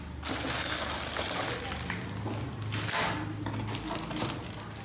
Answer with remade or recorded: recorded